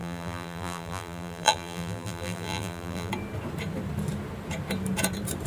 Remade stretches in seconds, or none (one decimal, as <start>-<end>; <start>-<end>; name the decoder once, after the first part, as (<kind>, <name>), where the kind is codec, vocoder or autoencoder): 0.0-3.1 (vocoder, BigVGAN v2)